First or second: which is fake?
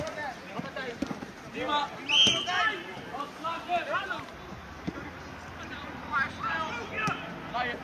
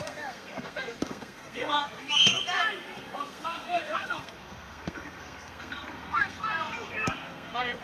second